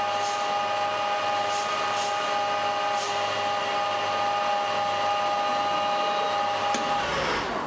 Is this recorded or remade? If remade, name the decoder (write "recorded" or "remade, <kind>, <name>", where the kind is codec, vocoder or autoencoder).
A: recorded